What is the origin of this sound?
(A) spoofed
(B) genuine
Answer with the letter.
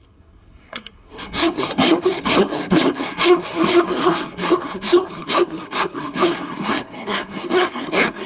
A